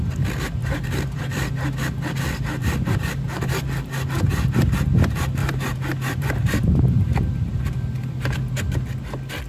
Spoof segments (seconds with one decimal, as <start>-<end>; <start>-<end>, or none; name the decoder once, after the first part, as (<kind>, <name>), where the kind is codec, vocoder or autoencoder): 0.6-1.2 (vocoder, BigVGAN v2); 2.6-3.5; 5.4-7.2